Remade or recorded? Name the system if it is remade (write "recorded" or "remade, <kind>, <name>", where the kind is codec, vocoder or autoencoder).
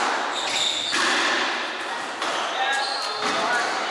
remade, vocoder, BigVGAN v2